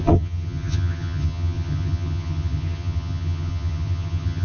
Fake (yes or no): yes